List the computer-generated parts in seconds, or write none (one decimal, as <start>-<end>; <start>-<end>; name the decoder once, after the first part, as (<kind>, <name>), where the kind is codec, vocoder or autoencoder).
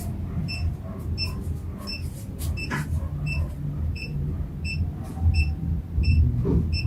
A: 1.9-4.4 (vocoder, BigVGAN v2)